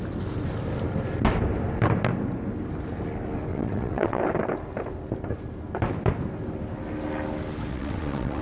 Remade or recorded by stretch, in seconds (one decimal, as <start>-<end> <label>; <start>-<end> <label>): 0.0-3.5 recorded; 3.5-4.2 remade; 4.2-7.7 recorded; 7.7-8.4 remade